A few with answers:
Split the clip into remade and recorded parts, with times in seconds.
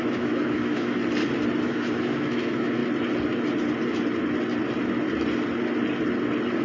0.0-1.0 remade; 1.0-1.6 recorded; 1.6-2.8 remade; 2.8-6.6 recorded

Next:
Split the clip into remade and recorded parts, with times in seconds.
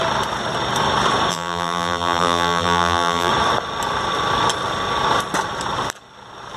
0.0-1.3 recorded; 1.3-3.3 remade; 3.3-6.6 recorded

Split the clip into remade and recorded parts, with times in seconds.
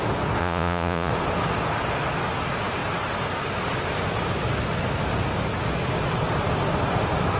0.0-0.4 recorded; 0.4-1.1 remade; 1.1-7.4 recorded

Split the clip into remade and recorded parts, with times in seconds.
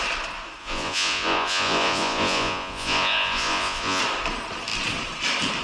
0.0-0.6 recorded; 0.6-4.0 remade; 4.0-5.6 recorded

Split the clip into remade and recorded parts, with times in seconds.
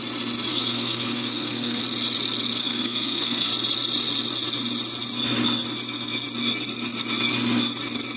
0.0-0.5 recorded; 0.5-1.8 remade; 1.8-2.6 recorded; 2.6-3.5 remade; 3.5-8.2 recorded